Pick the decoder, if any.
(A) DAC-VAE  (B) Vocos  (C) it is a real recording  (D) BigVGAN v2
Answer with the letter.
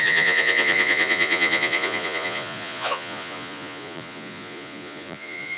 B